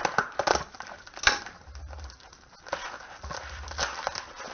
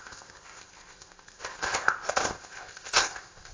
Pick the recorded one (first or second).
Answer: first